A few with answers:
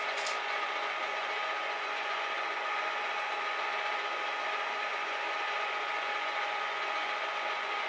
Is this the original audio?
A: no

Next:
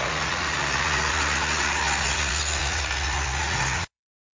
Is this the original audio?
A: no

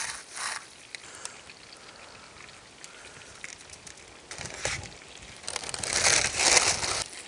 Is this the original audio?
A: yes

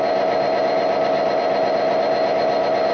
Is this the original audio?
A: yes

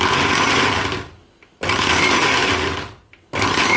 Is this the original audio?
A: yes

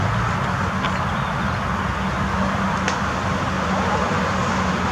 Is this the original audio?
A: yes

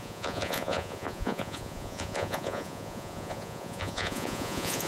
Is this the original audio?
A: no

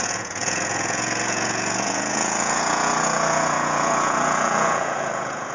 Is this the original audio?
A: no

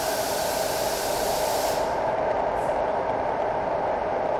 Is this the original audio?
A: yes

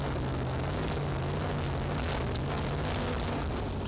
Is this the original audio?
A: yes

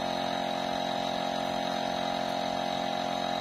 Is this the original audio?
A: yes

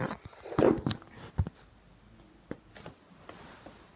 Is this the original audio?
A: yes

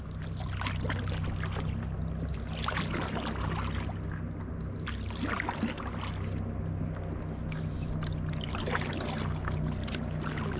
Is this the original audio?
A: yes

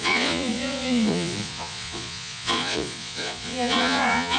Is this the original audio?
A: no